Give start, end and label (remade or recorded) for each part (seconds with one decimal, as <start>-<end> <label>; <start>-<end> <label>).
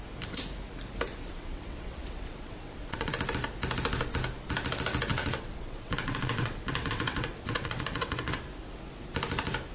0.0-1.2 recorded; 1.2-3.1 remade; 3.1-5.1 recorded; 5.1-8.4 remade; 8.4-9.7 recorded